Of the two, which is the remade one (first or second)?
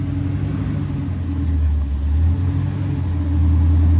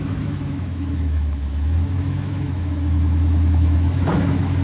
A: second